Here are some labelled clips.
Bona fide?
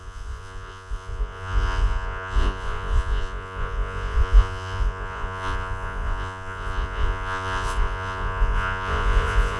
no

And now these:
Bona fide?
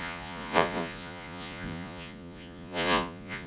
no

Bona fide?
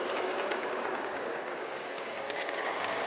no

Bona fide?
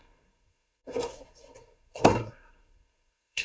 no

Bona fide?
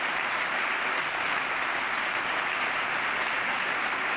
yes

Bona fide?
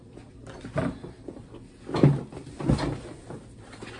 no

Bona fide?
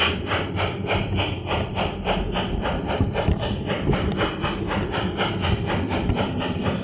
yes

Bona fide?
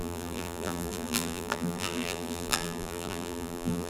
no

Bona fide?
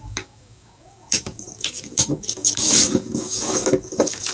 no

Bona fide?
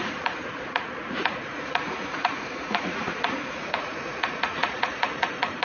no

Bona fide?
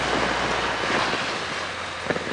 yes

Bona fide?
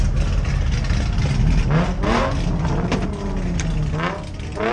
yes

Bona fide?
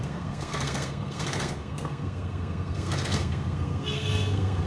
no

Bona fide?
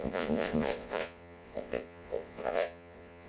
no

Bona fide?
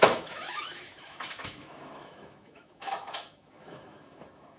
no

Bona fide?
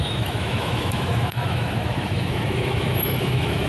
no